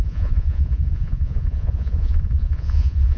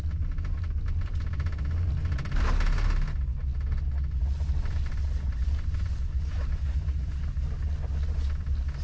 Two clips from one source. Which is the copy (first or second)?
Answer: first